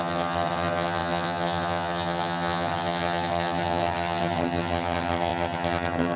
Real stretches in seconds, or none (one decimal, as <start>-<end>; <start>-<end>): none